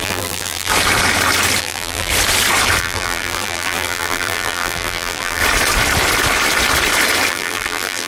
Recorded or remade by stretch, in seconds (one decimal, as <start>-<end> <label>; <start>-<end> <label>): 0.0-0.7 remade; 0.7-1.6 recorded; 1.6-2.1 remade; 2.1-2.8 recorded; 2.8-5.4 remade; 5.4-7.3 recorded; 7.3-8.1 remade